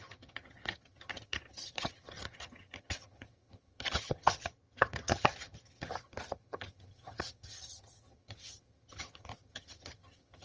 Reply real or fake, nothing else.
fake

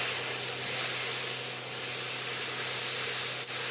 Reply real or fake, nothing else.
real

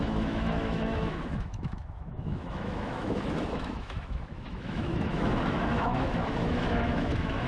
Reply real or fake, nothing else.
fake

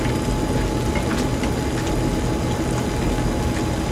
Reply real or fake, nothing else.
real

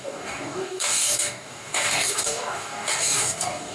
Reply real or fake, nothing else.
fake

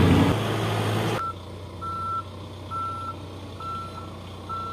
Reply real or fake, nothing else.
real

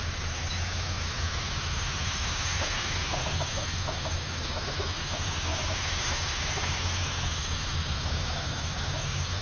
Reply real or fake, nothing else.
fake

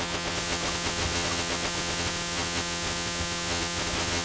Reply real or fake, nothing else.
fake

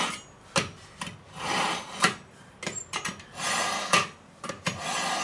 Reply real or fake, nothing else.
real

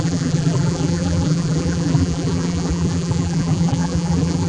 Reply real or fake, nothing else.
fake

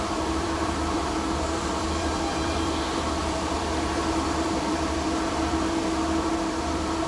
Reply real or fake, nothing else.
fake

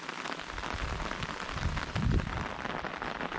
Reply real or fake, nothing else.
real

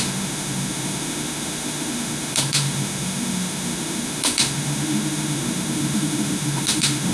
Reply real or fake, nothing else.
fake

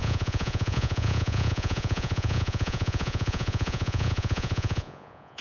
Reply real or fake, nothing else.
fake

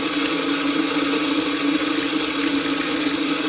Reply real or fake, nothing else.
real